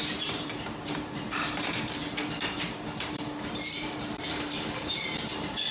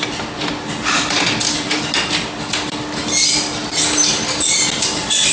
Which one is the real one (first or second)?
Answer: second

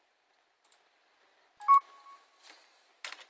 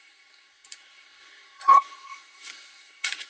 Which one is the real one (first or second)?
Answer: first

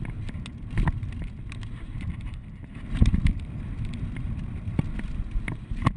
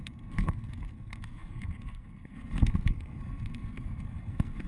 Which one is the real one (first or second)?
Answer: first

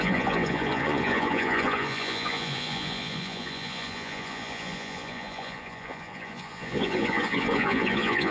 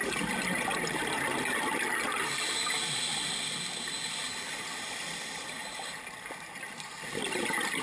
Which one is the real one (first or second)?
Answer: second